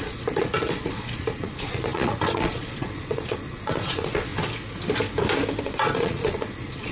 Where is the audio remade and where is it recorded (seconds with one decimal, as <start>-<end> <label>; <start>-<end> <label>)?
0.0-4.3 remade; 4.3-5.6 recorded; 5.6-6.9 remade

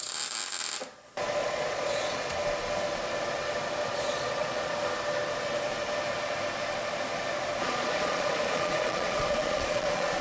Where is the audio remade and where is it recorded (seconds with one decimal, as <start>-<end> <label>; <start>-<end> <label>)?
0.0-1.4 recorded; 1.4-2.2 remade; 2.2-3.9 recorded; 3.9-4.7 remade; 4.7-7.6 recorded; 7.6-10.2 remade

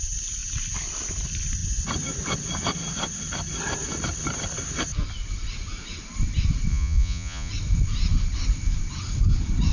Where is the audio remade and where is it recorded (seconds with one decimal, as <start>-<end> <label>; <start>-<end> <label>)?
0.0-6.7 recorded; 6.7-7.5 remade; 7.5-9.7 recorded

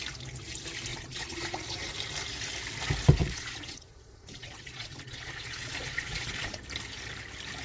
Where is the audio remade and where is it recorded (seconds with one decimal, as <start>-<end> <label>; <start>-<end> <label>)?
0.0-0.9 recorded; 0.9-1.9 remade; 1.9-3.2 recorded; 3.2-6.6 remade; 6.6-7.6 recorded

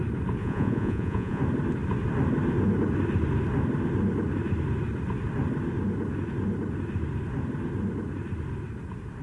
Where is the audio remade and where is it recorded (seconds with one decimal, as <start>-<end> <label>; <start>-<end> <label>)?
0.0-0.4 recorded; 0.4-1.4 remade; 1.4-9.2 recorded

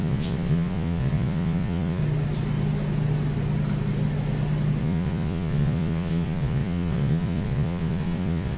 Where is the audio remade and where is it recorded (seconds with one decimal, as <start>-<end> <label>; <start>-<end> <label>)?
0.0-2.0 remade; 2.0-4.8 recorded; 4.8-8.6 remade